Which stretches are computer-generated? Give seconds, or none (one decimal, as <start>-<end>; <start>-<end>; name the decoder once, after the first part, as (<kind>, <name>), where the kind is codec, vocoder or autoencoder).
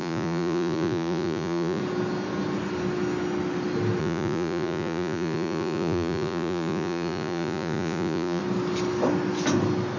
0.0-1.8 (vocoder, Vocos); 4.0-8.4